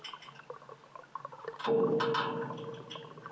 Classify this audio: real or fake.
real